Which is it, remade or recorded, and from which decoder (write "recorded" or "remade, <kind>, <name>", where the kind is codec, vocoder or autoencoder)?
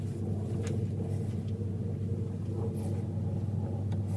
recorded